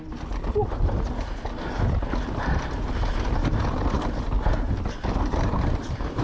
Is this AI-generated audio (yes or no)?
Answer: no